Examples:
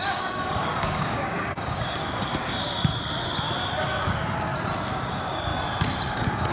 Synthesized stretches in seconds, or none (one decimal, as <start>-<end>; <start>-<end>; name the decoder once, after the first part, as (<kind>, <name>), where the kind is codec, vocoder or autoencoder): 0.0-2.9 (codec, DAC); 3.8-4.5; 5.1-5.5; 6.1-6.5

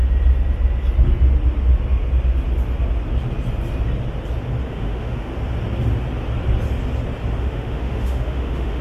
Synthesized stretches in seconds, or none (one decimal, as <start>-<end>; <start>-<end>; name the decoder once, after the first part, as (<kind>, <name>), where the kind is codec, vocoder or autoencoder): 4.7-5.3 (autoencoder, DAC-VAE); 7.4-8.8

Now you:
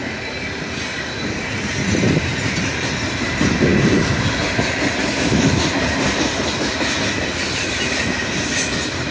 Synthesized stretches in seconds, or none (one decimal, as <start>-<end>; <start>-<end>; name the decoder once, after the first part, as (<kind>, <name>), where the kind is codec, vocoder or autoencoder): 3.7-7.8 (vocoder, BigVGAN v2)